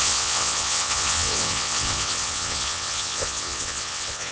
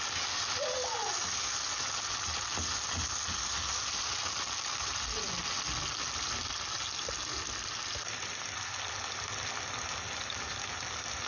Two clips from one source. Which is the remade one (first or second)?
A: first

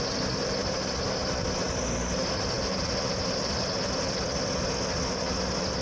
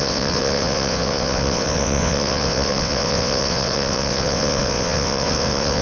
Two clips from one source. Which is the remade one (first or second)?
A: second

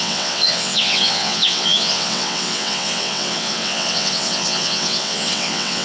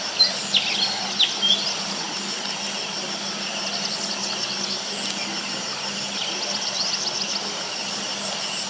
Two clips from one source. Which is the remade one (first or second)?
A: first